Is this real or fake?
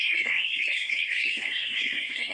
fake